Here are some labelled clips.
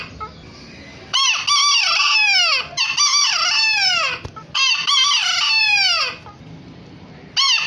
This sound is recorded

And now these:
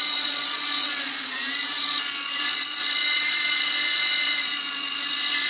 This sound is remade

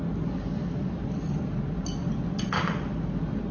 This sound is recorded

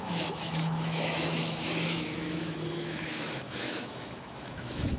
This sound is remade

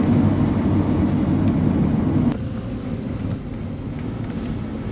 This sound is recorded